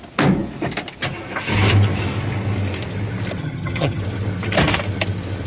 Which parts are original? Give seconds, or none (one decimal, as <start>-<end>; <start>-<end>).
0.0-3.4; 4.0-5.5